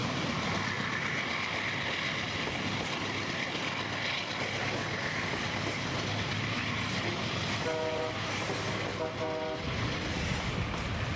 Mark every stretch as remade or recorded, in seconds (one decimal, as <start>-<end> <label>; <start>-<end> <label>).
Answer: 0.0-11.2 recorded